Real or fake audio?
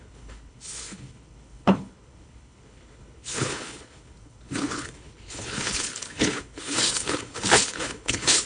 fake